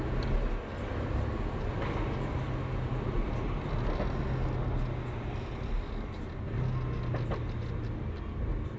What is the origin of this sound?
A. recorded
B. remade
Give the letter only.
A